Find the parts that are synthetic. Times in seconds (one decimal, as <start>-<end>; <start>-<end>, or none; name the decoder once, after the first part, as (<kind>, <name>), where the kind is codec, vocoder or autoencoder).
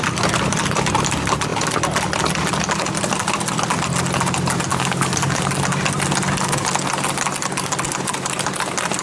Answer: 4.7-5.4 (codec, DAC)